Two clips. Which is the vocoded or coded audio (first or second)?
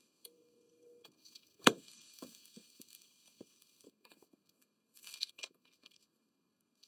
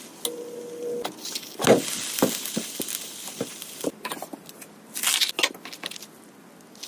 first